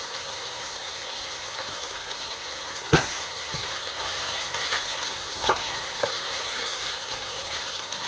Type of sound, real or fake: fake